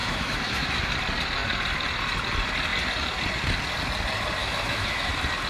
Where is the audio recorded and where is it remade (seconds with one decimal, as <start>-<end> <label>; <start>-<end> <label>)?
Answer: 0.0-0.9 remade; 0.9-4.4 recorded; 4.4-5.1 remade; 5.1-5.5 recorded